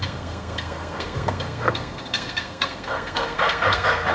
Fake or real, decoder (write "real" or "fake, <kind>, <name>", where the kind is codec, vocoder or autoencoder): fake, codec, SNAC